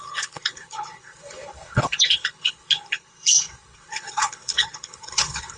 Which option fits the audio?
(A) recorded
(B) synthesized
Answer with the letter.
B